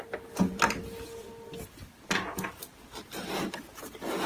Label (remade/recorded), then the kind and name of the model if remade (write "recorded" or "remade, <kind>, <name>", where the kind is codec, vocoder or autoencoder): recorded